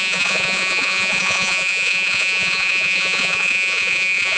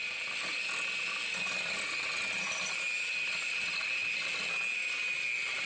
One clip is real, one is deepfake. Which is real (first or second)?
second